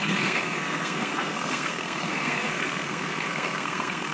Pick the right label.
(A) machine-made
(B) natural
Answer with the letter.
A